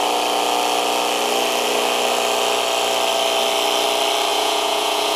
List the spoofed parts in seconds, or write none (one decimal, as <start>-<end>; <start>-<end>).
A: 4.3-5.2